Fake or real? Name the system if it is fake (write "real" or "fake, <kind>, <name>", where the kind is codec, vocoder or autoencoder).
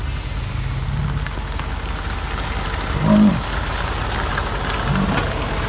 real